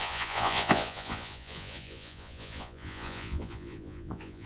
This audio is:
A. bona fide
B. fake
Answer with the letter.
B